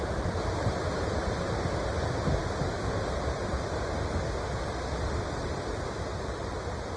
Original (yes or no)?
yes